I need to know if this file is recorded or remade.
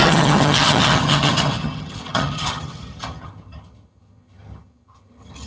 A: remade